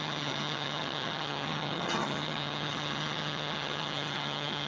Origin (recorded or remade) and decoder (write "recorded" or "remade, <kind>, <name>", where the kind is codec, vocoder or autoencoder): remade, vocoder, HiFi-GAN